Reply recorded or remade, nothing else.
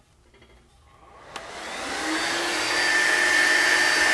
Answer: recorded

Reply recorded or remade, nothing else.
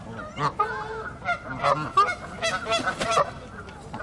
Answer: recorded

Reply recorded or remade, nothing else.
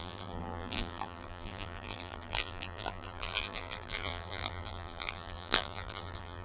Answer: remade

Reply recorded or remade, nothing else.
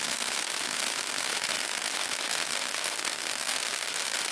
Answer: remade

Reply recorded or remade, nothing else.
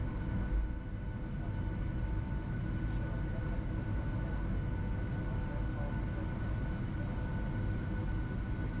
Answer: recorded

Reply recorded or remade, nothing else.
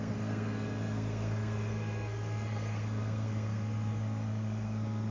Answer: remade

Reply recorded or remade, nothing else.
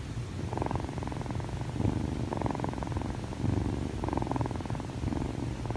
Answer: recorded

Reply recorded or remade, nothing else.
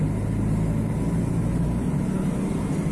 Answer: recorded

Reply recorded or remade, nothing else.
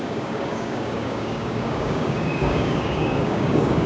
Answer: remade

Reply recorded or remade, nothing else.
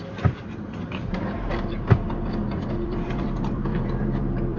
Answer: remade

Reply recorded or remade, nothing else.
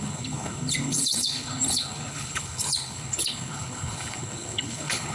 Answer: remade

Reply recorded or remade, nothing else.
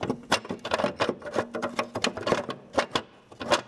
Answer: recorded